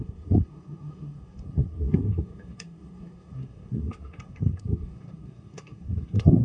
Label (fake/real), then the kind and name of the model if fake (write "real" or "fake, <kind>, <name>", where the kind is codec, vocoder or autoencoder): fake, codec, SNAC